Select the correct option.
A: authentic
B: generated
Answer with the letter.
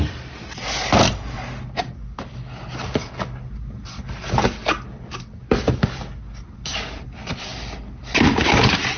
A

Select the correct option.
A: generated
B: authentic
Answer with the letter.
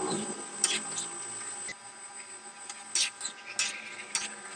B